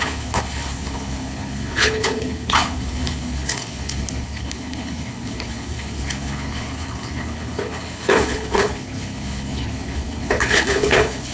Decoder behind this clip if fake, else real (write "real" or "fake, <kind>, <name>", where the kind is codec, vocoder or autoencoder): fake, codec, HILCodec